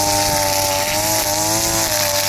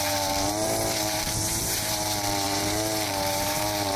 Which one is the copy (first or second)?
second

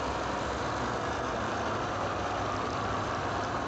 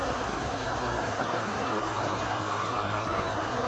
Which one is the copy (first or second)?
second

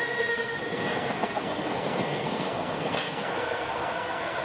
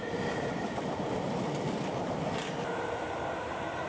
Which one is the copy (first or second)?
first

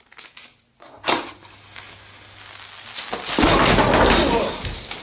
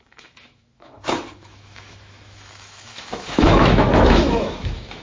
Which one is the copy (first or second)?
second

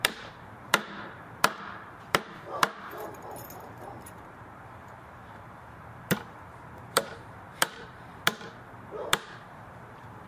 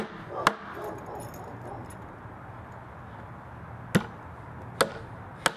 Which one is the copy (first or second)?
first